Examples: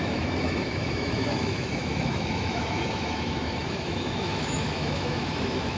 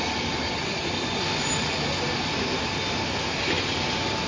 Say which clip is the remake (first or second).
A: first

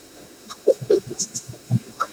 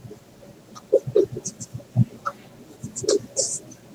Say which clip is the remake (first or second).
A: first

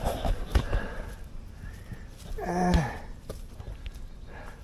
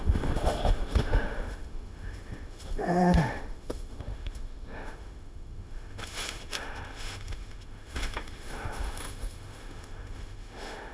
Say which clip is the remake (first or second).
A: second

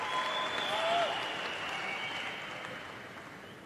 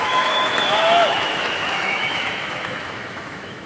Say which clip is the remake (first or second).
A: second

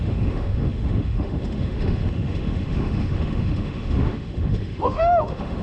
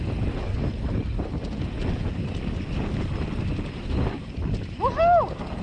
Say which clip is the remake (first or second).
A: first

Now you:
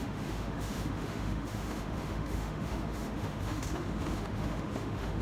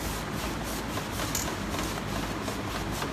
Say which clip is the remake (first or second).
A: first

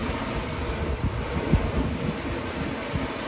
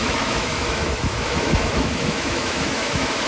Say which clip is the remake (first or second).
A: second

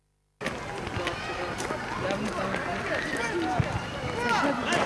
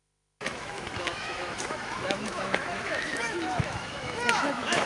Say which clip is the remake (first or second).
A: second